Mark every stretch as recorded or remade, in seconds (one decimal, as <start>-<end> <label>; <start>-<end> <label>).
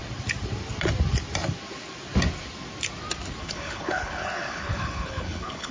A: 0.0-3.4 recorded; 3.4-5.7 remade